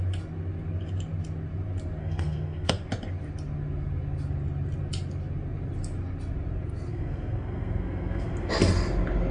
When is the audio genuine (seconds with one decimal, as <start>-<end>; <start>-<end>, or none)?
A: 0.0-2.0; 2.7-6.9; 8.5-9.3